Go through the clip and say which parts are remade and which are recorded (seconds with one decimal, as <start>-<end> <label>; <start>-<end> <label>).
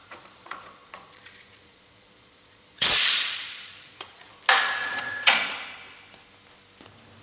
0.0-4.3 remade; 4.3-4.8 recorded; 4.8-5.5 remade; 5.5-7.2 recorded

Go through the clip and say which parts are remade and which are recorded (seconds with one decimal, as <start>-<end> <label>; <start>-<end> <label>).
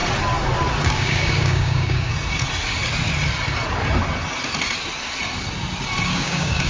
0.0-0.8 recorded; 0.8-2.1 remade; 2.1-6.1 recorded; 6.1-6.7 remade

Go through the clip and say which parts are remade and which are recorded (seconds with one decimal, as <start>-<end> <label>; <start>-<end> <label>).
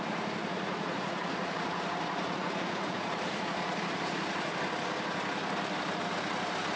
0.0-0.5 recorded; 0.5-4.5 remade; 4.5-6.8 recorded